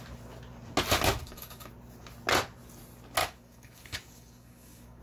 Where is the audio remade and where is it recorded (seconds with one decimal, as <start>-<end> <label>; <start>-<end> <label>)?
0.0-1.2 recorded; 1.2-1.7 remade; 1.7-3.2 recorded; 3.2-5.0 remade